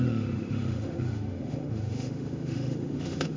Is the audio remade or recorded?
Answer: remade